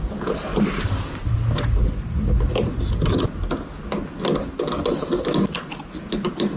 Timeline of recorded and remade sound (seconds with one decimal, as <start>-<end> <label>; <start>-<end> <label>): 0.0-6.6 recorded